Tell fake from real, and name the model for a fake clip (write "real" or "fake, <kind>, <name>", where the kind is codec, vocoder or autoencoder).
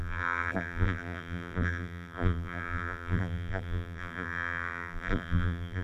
fake, vocoder, BigVGAN v2